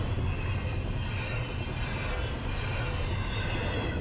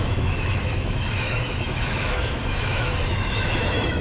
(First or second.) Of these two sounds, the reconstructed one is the second